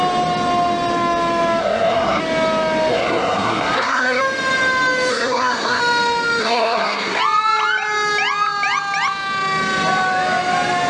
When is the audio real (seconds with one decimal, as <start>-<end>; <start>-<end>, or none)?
0.0-1.6; 2.2-2.9; 4.2-5.1; 5.8-6.4; 7.2-10.9